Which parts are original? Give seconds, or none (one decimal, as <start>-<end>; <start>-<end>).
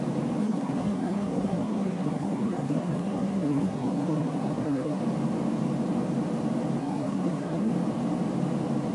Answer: 0.0-0.4; 5.0-6.8; 7.7-8.9